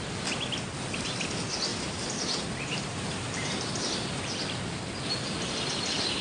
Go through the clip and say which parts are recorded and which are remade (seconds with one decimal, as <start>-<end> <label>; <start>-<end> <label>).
0.0-1.7 recorded; 1.7-4.3 remade; 4.3-6.2 recorded